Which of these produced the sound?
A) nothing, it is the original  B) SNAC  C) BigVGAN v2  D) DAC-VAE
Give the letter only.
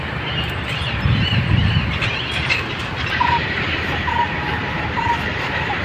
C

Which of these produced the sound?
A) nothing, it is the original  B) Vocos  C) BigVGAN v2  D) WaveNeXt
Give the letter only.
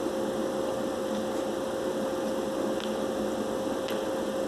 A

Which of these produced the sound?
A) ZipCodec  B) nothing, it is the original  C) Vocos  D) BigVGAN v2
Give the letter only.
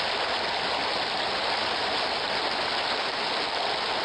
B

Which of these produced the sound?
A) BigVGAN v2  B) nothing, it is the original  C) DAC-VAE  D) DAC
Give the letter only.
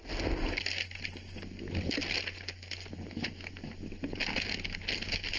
B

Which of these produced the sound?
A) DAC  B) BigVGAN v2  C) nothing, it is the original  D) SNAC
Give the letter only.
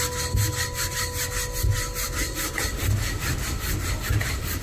C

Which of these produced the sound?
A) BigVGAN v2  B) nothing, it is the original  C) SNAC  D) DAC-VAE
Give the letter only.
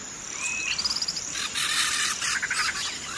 B